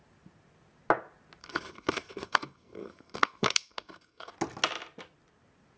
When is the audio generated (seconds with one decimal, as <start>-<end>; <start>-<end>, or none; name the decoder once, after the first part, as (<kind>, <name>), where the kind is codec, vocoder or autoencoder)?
1.4-4.3 (codec, SNAC)